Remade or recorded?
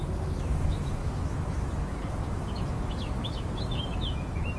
remade